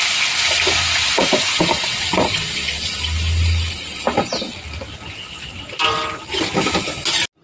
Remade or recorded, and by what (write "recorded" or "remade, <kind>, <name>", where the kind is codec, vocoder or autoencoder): recorded